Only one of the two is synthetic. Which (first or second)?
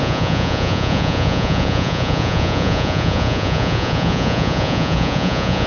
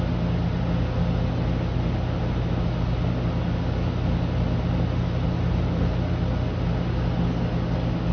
first